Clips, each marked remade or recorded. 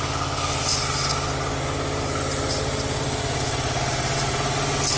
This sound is recorded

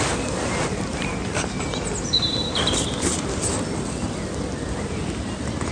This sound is recorded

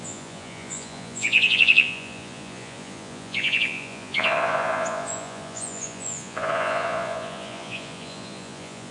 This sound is remade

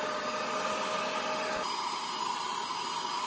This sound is recorded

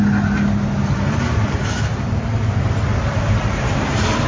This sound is recorded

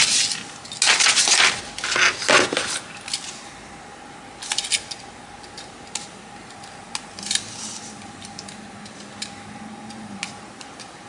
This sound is recorded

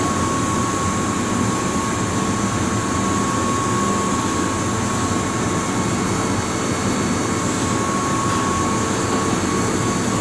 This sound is recorded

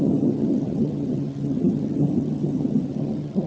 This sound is remade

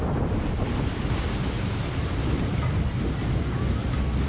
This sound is recorded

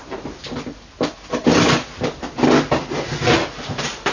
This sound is recorded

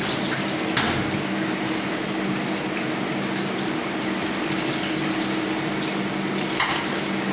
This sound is recorded